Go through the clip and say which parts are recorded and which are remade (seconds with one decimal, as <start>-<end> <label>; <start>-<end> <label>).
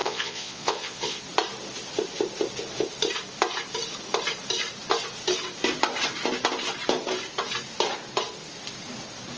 0.0-1.2 remade; 1.2-9.4 recorded